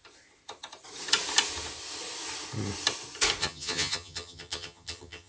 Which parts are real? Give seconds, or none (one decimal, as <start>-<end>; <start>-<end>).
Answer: 0.0-3.4